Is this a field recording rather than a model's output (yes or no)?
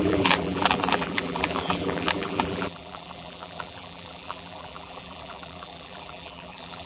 no